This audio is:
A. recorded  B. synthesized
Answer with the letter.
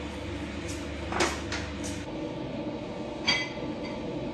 A